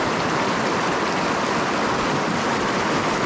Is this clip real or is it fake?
real